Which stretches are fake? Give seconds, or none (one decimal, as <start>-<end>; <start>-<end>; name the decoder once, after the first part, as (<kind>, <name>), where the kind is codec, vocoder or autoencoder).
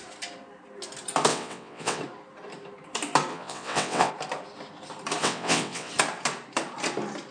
1.3-2.0 (vocoder, WaveNeXt); 3.3-4.1; 5.2-5.9